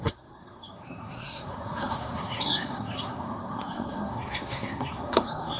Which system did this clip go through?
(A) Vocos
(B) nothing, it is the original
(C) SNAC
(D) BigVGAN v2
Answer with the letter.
C